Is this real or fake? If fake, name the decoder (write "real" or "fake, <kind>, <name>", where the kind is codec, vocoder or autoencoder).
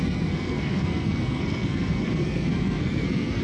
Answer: fake, codec, SNAC